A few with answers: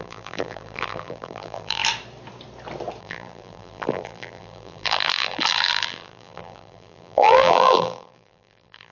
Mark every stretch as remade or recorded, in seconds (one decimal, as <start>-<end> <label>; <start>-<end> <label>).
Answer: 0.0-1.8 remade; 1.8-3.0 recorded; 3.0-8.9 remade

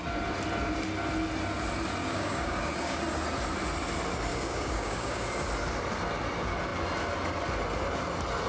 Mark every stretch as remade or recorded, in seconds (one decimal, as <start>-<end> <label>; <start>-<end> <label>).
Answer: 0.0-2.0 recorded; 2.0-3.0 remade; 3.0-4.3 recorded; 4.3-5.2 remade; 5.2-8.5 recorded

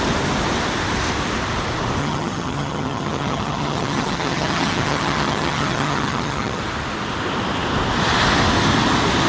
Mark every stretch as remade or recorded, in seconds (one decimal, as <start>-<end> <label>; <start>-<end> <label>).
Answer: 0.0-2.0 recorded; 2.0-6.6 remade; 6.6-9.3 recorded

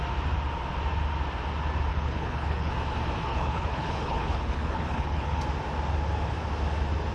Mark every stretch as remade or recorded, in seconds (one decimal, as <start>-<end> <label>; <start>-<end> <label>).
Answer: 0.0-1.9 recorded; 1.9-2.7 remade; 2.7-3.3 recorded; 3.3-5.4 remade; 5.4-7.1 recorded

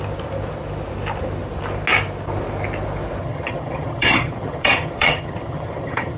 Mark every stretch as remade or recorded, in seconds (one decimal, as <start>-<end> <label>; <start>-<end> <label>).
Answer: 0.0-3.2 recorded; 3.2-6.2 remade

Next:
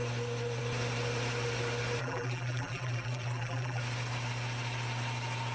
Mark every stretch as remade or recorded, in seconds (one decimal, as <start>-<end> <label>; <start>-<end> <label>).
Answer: 0.0-2.0 recorded; 2.0-3.8 remade; 3.8-5.5 recorded

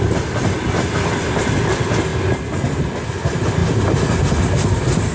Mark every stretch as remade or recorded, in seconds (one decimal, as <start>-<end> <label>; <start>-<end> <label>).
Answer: 0.0-5.1 recorded